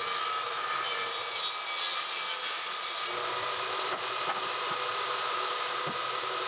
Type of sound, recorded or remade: recorded